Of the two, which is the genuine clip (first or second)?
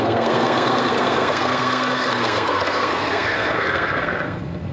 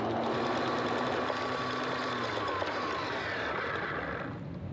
second